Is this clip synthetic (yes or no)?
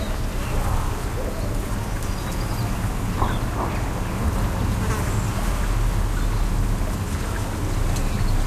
no